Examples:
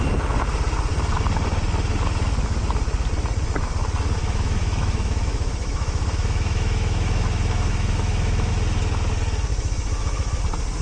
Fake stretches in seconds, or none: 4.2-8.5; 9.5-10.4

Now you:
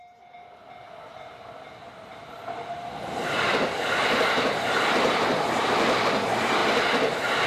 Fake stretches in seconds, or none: 0.0-0.6; 3.6-6.6

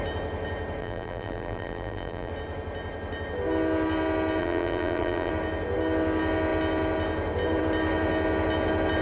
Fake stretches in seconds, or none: 0.8-2.3; 4.4-5.3

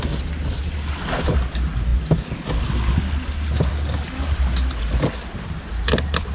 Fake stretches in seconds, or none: none

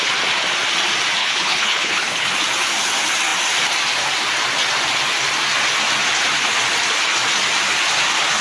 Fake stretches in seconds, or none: 1.2-2.3

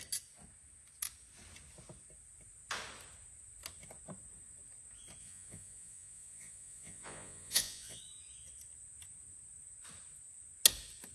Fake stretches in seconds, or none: 5.2-8.0

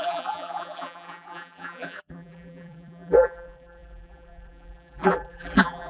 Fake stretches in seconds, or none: 0.0-5.9

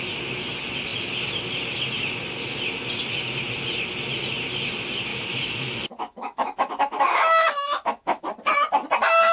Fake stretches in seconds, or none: 5.1-8.2